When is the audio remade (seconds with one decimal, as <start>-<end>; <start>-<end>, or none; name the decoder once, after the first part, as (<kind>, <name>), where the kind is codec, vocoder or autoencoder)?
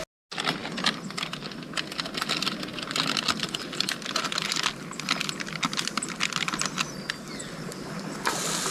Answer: none